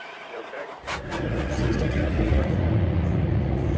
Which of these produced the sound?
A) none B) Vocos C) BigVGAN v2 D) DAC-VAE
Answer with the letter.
B